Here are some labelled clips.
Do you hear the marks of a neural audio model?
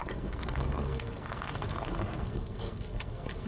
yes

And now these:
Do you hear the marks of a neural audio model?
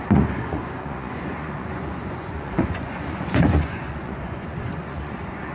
yes